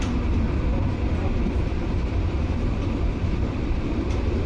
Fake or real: fake